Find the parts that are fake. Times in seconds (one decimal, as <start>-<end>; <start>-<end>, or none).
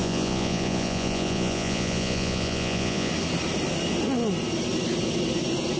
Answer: 0.0-3.1